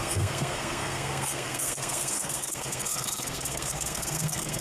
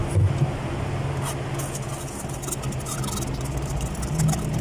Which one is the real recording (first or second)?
second